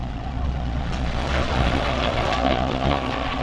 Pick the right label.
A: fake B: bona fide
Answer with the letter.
A